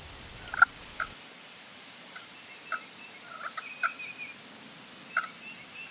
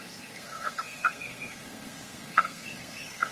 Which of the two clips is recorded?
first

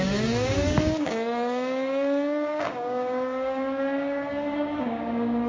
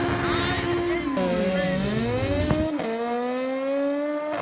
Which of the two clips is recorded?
second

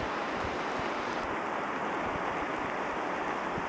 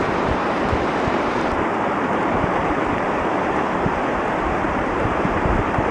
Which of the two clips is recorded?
first